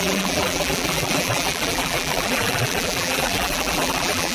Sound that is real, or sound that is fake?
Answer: fake